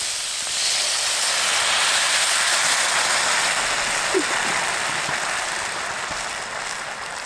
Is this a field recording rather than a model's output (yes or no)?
yes